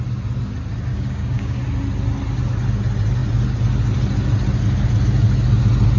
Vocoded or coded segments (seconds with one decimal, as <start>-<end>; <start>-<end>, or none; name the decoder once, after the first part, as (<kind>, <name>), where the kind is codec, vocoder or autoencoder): 0.9-1.6 (codec, DAC)